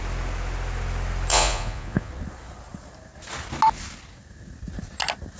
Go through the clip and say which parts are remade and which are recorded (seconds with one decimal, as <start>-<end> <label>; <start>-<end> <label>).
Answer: 0.0-1.3 recorded; 1.3-2.1 remade; 2.1-5.4 recorded